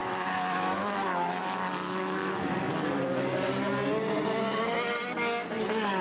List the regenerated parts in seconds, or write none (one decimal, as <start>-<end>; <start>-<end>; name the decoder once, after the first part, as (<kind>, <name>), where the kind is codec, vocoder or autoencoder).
0.0-2.7 (autoencoder, DAC-VAE)